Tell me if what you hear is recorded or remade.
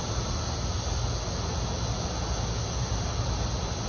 recorded